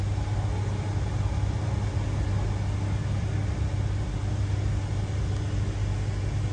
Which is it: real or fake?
real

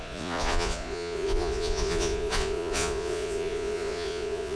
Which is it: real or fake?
fake